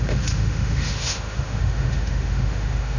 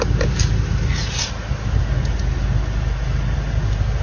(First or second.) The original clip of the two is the second